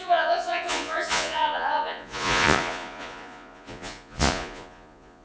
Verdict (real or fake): fake